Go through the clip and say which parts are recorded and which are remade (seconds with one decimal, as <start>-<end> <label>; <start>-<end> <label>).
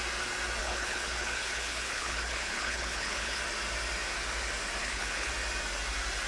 0.0-0.6 recorded; 0.6-3.4 remade; 3.4-4.8 recorded; 4.8-5.3 remade; 5.3-6.3 recorded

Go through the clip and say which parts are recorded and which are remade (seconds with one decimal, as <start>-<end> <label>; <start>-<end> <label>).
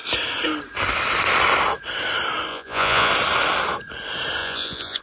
0.0-2.5 recorded; 2.5-3.1 remade; 3.1-4.4 recorded; 4.4-5.0 remade